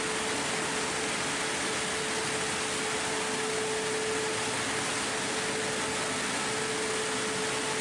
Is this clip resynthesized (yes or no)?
no